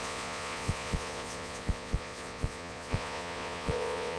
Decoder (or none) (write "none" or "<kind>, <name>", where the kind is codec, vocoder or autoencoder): vocoder, Vocos